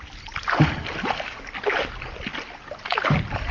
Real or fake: real